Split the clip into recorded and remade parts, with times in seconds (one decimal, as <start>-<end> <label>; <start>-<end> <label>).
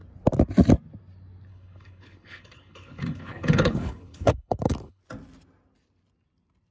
0.0-1.5 recorded; 1.5-5.0 remade; 5.0-6.7 recorded